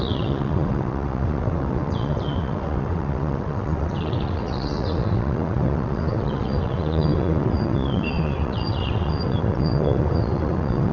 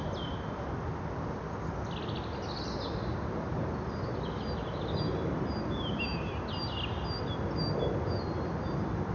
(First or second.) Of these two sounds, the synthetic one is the first